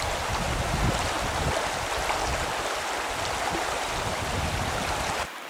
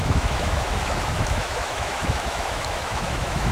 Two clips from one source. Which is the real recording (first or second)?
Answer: first